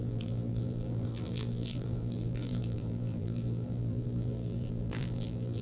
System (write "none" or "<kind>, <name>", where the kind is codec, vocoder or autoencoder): vocoder, BigVGAN v2